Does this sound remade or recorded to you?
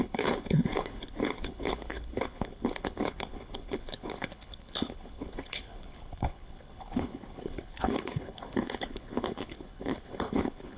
remade